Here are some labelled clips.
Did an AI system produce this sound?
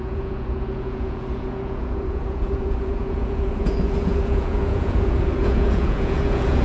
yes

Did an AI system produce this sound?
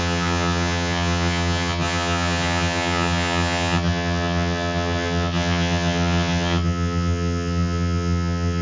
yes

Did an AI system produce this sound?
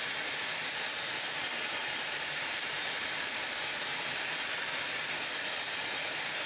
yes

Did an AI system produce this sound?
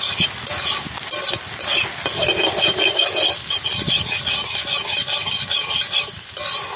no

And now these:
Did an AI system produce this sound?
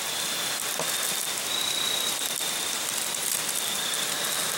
no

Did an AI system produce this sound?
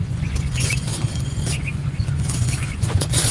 yes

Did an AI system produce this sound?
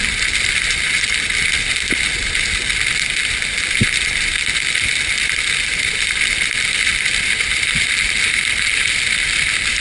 yes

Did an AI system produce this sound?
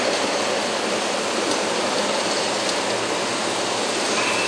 no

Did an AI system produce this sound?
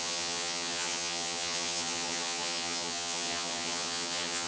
yes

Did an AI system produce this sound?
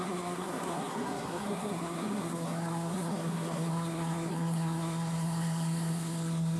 yes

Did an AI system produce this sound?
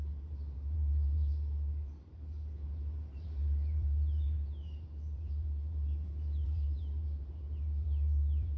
yes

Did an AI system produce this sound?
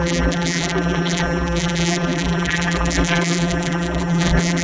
yes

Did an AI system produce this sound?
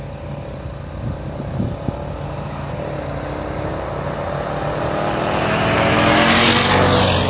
no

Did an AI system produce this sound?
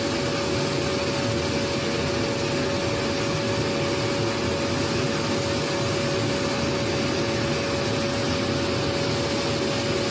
no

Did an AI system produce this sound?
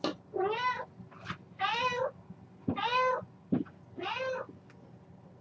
no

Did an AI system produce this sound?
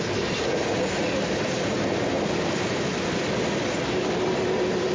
no